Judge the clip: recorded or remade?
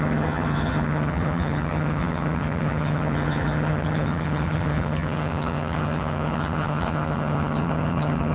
remade